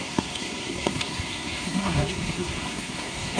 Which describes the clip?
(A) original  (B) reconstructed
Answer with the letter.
B